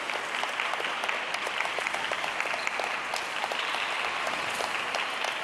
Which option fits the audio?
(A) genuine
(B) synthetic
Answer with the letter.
A